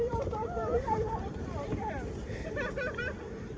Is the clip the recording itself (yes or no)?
no